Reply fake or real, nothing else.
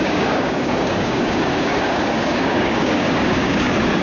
fake